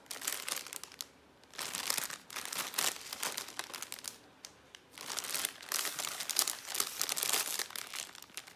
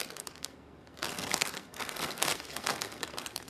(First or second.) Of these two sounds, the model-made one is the second